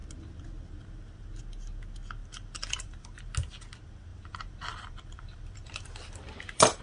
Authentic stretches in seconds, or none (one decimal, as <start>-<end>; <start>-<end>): 0.0-2.2; 3.2-4.1